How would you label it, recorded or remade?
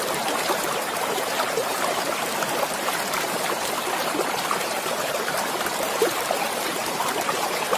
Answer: remade